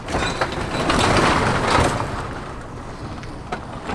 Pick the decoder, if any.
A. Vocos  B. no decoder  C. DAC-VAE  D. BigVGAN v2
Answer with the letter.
B